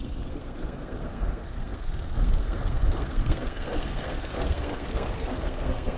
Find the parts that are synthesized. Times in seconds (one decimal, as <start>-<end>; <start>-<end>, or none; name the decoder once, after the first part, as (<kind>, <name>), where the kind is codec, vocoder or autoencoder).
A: 0.0-6.0 (codec, SNAC)